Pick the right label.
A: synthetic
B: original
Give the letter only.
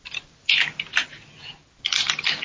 B